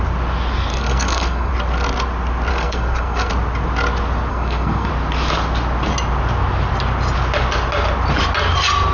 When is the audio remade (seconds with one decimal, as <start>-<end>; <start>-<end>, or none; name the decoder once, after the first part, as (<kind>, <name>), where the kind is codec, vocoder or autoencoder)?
0.7-1.5 (codec, SNAC); 2.5-3.3; 4.3-4.9